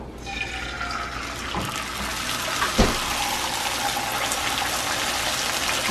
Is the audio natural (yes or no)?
yes